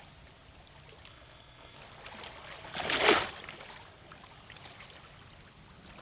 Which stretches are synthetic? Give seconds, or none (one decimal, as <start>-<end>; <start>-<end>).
1.1-1.8